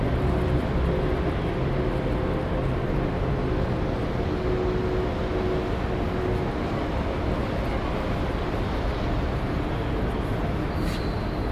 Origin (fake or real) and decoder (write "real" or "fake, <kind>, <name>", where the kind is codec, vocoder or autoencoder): real